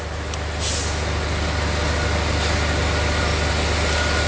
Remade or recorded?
recorded